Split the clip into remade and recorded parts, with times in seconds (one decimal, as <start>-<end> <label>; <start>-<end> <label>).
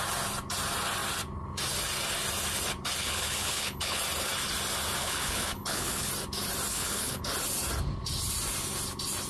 0.0-3.0 recorded; 3.0-4.0 remade; 4.0-5.0 recorded; 5.0-6.1 remade; 6.1-6.7 recorded; 6.7-7.2 remade; 7.2-9.3 recorded